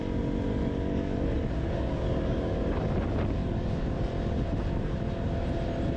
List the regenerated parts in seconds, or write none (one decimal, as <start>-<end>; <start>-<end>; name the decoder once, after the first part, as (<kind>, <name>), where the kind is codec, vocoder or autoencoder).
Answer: 0.5-2.8 (codec, DAC); 3.4-4.0